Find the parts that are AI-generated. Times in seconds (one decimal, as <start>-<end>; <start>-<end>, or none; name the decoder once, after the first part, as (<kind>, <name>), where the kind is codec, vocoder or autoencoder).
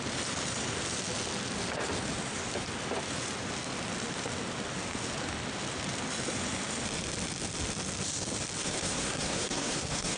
8.6-10.2 (codec, SNAC)